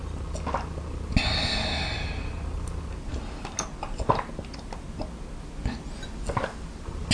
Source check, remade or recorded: recorded